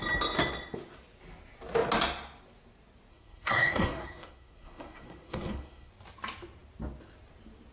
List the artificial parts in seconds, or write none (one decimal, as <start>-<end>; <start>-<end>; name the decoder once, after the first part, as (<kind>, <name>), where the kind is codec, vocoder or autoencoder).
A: 3.1-5.9 (codec, SNAC)